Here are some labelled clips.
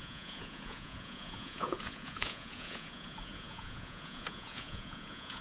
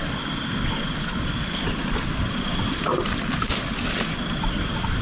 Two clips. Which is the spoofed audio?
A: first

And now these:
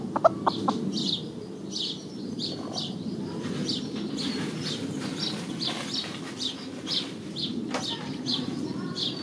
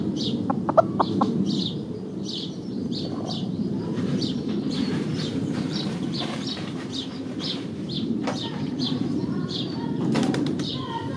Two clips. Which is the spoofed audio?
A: second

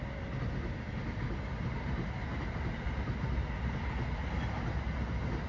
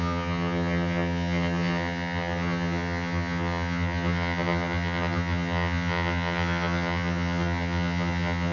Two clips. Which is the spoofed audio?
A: second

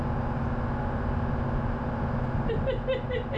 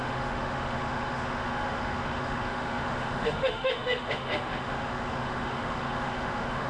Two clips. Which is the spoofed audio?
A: second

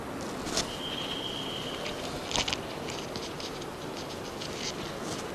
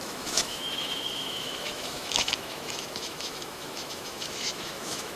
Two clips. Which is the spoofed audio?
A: second